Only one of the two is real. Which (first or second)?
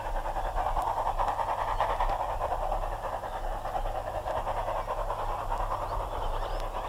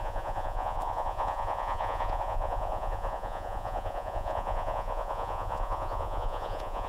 first